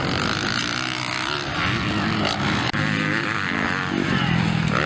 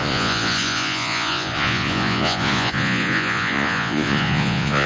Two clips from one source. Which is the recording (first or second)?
first